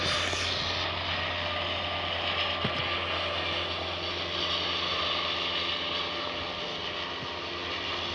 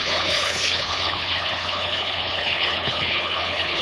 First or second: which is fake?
second